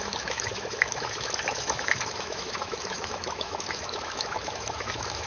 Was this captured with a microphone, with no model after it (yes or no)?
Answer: no